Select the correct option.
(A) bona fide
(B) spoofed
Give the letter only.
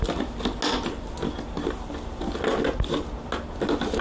A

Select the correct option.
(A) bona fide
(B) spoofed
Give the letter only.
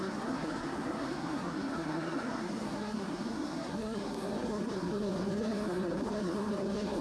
B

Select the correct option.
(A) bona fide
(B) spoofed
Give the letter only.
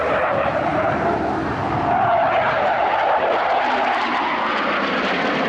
A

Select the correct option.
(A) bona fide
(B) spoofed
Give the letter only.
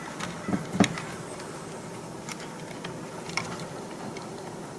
A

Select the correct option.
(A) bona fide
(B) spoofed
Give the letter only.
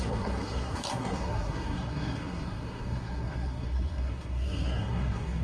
B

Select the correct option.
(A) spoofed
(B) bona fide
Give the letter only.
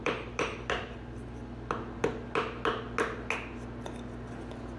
B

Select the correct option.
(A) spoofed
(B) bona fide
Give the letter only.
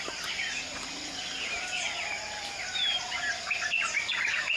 B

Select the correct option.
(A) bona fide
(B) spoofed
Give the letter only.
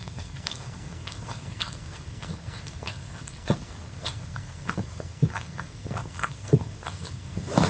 B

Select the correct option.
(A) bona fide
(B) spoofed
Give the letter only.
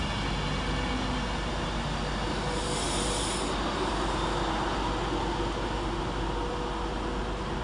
A